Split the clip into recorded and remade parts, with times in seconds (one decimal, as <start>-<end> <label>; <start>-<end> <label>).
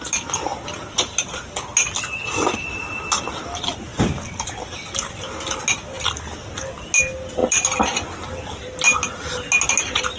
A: 0.0-10.2 recorded